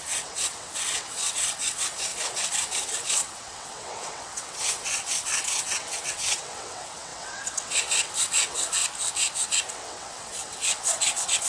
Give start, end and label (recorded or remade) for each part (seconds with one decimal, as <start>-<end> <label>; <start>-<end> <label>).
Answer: 0.0-8.8 remade; 8.8-9.7 recorded; 9.7-11.5 remade